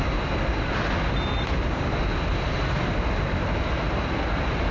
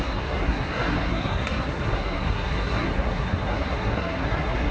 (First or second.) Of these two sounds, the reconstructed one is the second